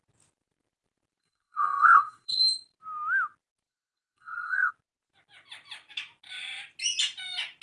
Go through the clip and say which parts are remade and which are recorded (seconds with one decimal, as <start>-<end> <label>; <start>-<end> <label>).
0.0-1.2 recorded; 1.2-2.4 remade; 2.4-3.7 recorded; 3.7-4.7 remade; 4.7-7.6 recorded